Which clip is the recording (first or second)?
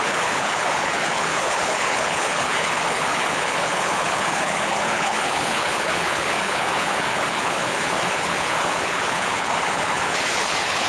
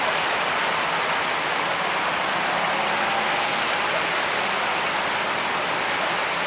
second